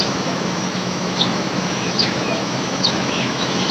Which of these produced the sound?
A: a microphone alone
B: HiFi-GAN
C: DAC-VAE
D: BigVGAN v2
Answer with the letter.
C